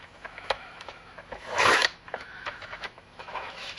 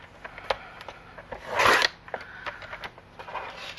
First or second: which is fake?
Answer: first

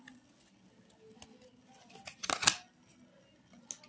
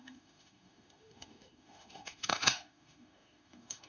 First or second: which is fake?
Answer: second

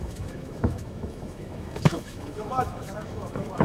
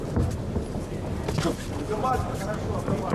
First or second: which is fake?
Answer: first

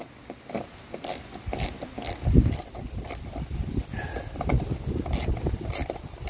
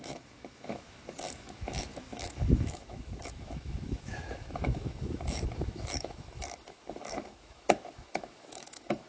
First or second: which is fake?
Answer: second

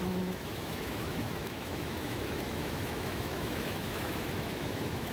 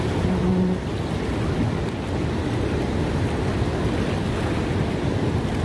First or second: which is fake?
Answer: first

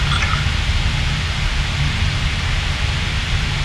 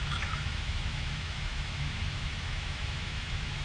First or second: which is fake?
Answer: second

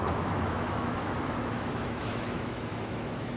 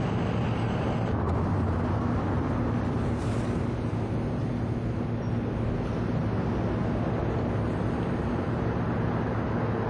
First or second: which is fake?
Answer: first